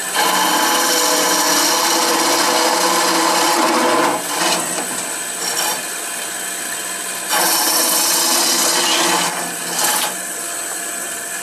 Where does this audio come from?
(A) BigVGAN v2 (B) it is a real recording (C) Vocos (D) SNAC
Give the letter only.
B